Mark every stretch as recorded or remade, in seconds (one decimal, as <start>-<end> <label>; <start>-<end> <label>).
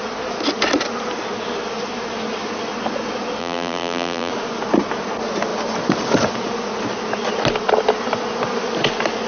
0.0-3.4 recorded; 3.4-4.3 remade; 4.3-9.3 recorded